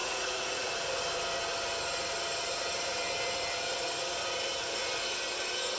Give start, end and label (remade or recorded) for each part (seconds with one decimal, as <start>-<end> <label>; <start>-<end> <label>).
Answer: 0.0-0.7 remade; 0.7-5.8 recorded